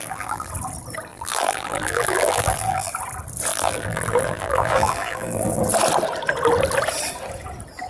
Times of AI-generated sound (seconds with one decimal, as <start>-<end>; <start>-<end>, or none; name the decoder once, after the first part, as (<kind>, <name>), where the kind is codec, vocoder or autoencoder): 0.0-0.5 (vocoder, BigVGAN v2); 1.1-2.9; 3.5-5.6